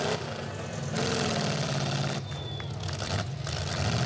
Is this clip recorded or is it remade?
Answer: recorded